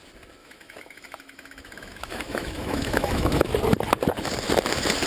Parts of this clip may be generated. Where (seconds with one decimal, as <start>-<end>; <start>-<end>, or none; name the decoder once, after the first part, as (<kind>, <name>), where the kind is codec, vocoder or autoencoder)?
0.4-3.5 (autoencoder, DAC-VAE)